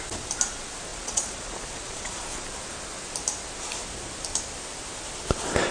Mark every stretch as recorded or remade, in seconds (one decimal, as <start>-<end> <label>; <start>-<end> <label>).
0.0-0.9 recorded; 0.9-2.2 remade; 2.2-5.7 recorded